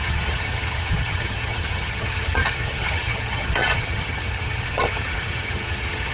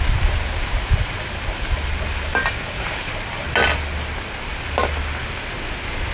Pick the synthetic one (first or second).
first